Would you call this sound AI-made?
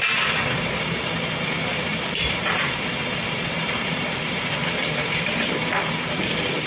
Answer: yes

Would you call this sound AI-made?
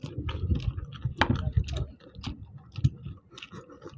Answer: no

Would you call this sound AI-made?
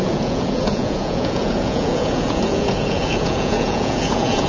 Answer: yes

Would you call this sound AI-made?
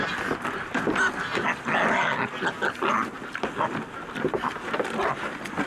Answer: no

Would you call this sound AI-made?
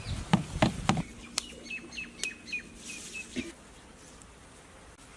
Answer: no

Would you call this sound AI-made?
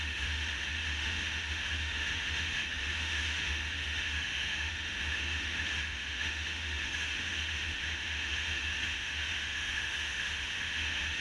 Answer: yes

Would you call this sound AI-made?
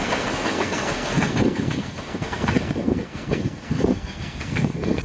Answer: yes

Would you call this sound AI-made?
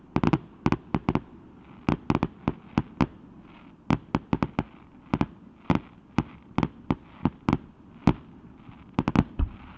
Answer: no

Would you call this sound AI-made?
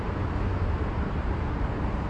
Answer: yes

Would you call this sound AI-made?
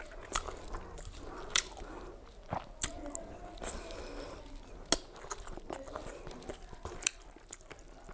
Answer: no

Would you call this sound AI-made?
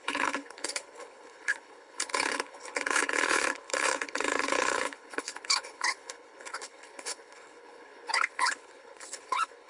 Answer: yes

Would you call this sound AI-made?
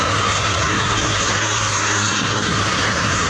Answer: yes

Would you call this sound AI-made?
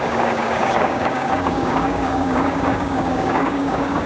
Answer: yes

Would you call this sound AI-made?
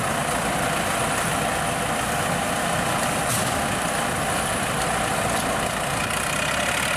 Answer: no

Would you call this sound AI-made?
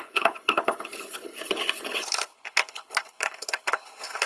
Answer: yes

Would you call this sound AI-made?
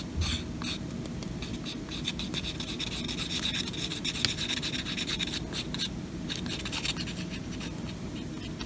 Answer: no